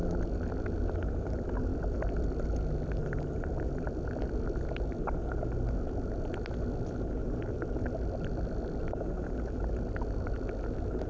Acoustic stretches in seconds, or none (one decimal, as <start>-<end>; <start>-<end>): 0.0-11.1